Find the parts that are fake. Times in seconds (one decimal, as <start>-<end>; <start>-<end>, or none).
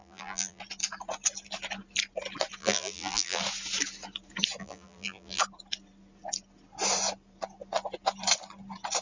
0.0-0.6; 2.6-3.4; 4.6-5.4